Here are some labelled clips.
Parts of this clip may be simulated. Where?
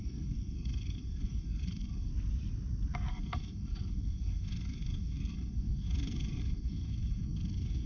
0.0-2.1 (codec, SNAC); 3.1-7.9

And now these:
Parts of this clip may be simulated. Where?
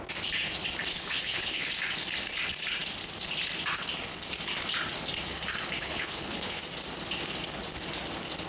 0.9-1.7 (codec, HILCodec); 5.8-6.6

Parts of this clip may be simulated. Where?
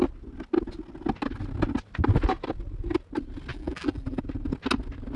3.5-4.2 (vocoder, BigVGAN v2)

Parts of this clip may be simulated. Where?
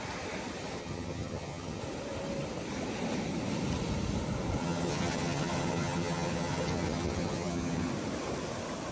0.8-1.8 (vocoder, HiFi-GAN); 4.6-7.9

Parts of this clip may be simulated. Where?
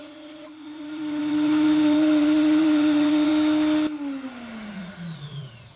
0.0-3.3 (vocoder, Vocos); 4.7-5.8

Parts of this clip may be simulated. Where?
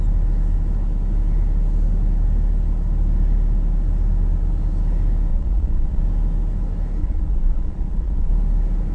5.3-6.0 (vocoder, Vocos); 7.0-8.3